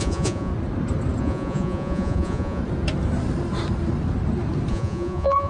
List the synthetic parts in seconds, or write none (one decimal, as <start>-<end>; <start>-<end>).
0.0-0.5; 1.2-2.6; 4.7-5.5